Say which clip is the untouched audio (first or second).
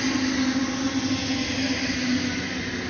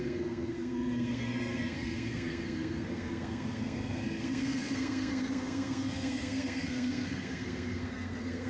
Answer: first